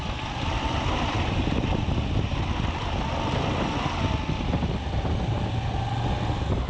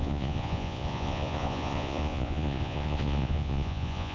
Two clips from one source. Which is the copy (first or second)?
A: second